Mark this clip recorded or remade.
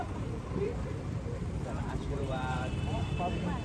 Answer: remade